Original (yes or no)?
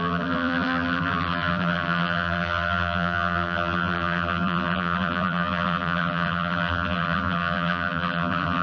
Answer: no